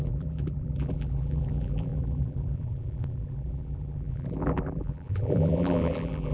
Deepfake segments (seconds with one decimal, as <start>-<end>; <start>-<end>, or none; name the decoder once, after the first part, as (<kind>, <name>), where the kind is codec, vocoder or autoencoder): 0.0-6.3 (vocoder, BigVGAN v2)